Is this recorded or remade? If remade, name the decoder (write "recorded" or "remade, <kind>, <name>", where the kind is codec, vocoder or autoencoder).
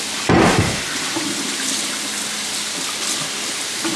recorded